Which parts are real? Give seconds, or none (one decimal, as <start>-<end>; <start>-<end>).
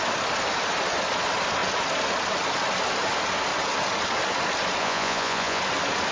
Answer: 0.0-4.8; 5.6-6.1